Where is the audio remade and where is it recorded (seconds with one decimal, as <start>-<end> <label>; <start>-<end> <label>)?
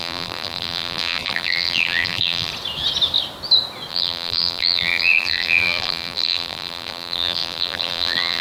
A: 0.0-2.5 remade; 2.5-3.9 recorded; 3.9-8.4 remade